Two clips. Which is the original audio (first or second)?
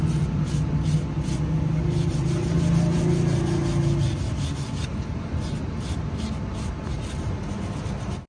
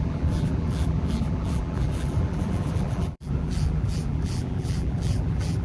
first